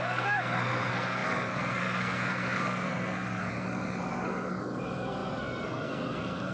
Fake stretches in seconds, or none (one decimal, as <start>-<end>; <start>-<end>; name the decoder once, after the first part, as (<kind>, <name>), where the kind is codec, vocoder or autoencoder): 0.0-6.5 (codec, SNAC)

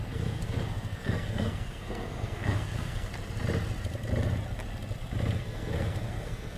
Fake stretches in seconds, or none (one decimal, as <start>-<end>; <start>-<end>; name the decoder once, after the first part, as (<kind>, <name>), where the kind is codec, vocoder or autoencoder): 0.0-3.1 (codec, SNAC); 5.4-6.6